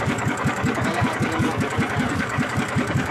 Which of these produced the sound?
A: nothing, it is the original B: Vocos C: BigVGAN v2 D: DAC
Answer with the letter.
D